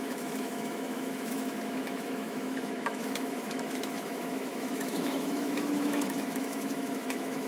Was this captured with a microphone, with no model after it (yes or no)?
no